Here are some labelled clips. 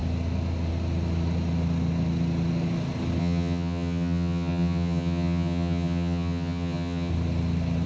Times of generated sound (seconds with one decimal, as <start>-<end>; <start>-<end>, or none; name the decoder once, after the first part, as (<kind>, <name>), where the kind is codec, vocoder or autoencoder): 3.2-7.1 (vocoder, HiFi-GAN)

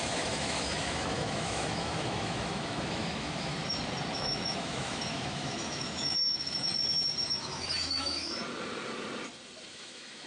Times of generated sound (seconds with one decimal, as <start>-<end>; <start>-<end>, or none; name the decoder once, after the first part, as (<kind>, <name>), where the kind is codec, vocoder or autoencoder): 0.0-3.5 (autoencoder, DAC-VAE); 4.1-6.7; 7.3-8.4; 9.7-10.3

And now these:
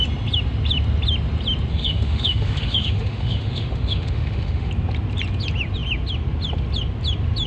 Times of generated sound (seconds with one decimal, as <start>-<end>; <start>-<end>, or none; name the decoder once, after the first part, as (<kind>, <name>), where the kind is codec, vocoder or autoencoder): 1.7-4.7 (autoencoder, DAC-VAE)